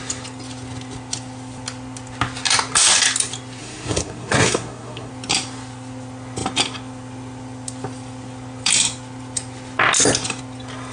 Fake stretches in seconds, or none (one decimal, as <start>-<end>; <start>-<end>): 3.6-5.1